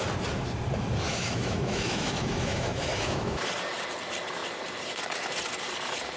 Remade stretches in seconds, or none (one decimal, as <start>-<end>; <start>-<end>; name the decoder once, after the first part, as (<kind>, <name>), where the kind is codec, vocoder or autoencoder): 1.1-3.4 (autoencoder, DAC-VAE)